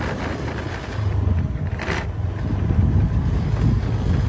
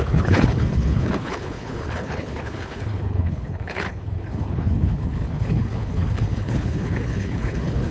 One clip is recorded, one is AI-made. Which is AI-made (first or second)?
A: second